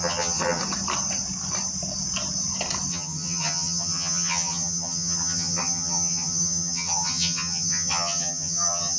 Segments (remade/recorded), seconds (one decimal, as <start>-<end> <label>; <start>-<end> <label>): 0.0-0.6 remade; 0.6-2.9 recorded; 2.9-9.0 remade